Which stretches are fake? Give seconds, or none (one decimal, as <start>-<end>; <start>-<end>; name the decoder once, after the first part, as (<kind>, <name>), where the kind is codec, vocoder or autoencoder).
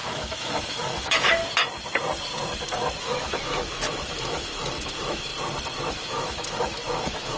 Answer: 0.0-1.4 (autoencoder, DAC-VAE); 3.0-5.3; 5.9-7.4